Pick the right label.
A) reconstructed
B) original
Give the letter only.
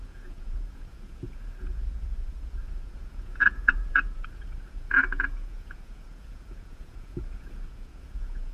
A